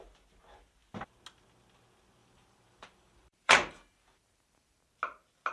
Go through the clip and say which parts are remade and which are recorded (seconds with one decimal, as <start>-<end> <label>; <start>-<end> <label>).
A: 0.0-2.2 recorded; 2.2-4.8 remade; 4.8-5.5 recorded